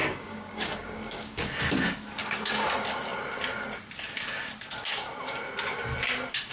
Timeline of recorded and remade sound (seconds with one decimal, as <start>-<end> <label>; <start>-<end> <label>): 0.0-1.4 remade; 1.4-2.2 recorded; 2.2-2.7 remade; 2.7-6.5 recorded